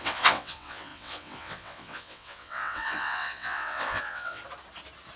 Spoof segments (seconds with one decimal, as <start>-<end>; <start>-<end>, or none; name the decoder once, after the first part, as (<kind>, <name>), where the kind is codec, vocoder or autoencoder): 0.0-4.4 (vocoder, WaveNeXt)